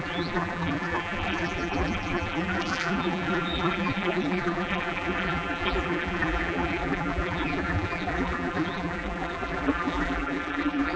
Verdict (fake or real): fake